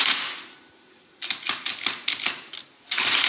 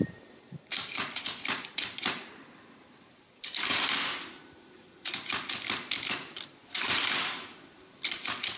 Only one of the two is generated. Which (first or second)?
second